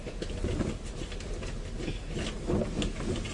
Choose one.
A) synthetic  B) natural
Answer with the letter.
B